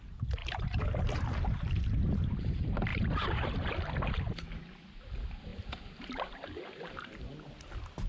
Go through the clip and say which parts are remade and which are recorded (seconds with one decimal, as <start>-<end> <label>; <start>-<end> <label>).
0.0-0.4 recorded; 0.4-2.3 remade; 2.3-2.9 recorded; 2.9-3.7 remade; 3.7-5.5 recorded; 5.5-7.2 remade; 7.2-8.1 recorded